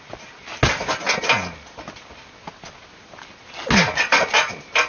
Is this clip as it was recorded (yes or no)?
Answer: yes